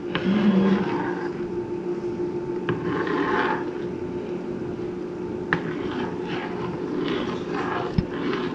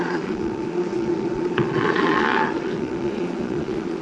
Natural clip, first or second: first